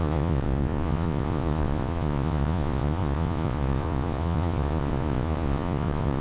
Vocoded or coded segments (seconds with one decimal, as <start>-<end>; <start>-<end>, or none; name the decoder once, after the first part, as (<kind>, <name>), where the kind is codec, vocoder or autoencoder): 0.0-6.2 (vocoder, Vocos)